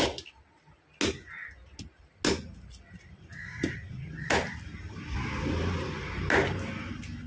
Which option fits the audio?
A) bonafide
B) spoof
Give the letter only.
A